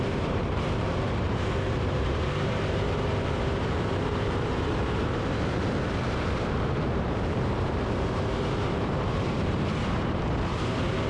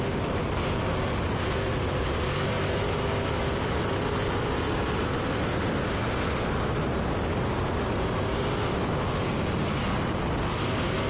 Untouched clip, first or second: second